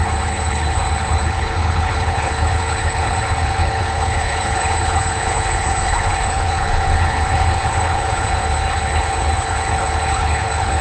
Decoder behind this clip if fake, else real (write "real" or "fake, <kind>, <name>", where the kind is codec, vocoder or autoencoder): fake, codec, HILCodec